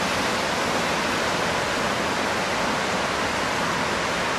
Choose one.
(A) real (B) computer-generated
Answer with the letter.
A